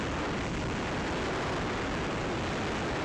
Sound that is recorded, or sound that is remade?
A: recorded